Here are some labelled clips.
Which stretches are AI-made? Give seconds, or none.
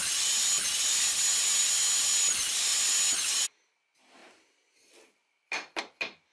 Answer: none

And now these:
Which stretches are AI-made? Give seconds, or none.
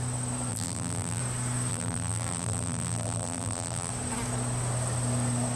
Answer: 0.5-1.2 (vocoder, BigVGAN v2); 1.7-3.9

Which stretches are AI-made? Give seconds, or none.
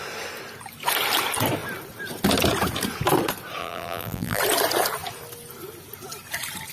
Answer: 3.6-4.4 (vocoder, BigVGAN v2)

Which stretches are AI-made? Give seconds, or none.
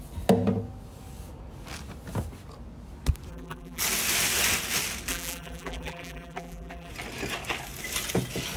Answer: 3.3-3.8 (vocoder, BigVGAN v2); 5.1-6.9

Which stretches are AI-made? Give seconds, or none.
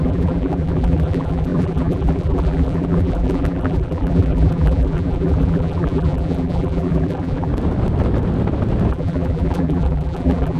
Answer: 0.0-7.5 (vocoder, BigVGAN v2); 8.9-10.6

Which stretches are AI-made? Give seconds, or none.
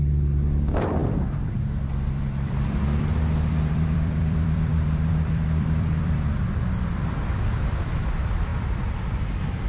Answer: 0.0-9.7 (vocoder, BigVGAN v2)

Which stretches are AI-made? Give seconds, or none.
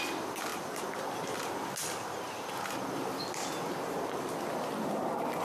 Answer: none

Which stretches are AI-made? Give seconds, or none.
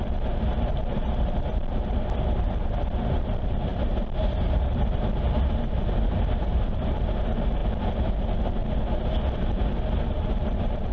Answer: 0.0-8.6 (vocoder, BigVGAN v2); 10.0-10.9